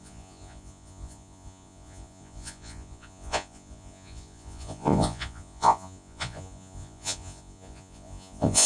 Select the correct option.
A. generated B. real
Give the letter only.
A